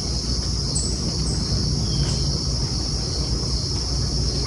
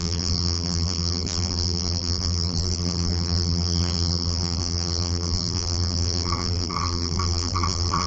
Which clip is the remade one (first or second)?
second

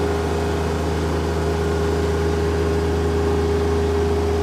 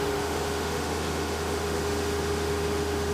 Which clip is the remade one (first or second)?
second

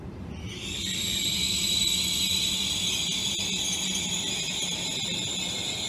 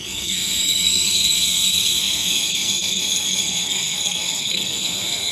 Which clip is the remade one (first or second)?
second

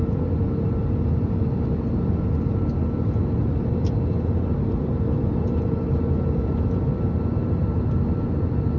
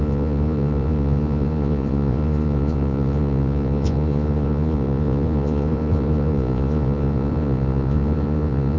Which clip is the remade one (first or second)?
second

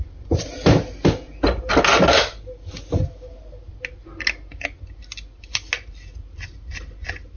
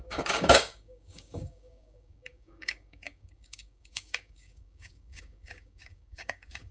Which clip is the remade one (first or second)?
second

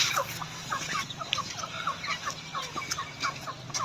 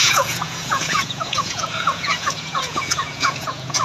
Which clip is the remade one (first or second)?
second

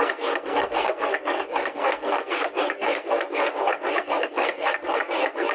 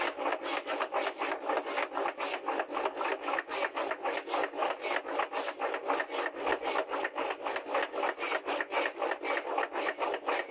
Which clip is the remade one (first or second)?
first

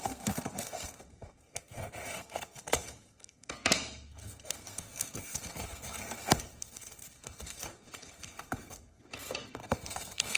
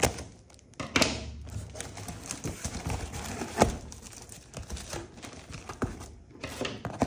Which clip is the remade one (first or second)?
first